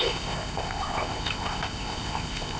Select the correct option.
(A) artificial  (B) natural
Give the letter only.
A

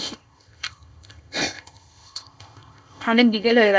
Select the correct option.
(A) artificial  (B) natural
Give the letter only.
A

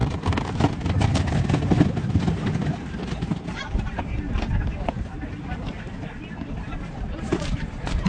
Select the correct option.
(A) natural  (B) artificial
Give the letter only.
B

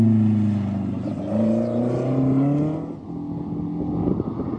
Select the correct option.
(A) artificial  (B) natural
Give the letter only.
B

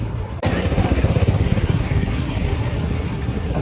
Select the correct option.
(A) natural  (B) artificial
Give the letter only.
B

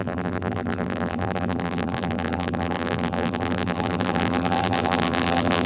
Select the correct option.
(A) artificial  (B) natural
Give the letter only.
A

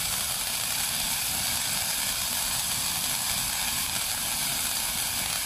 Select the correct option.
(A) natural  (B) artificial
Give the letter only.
A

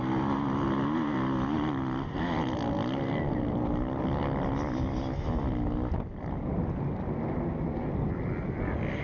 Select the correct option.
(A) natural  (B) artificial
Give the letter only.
A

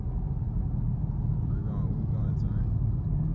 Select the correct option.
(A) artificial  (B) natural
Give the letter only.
B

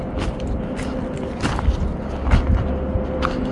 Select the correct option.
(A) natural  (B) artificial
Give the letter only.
A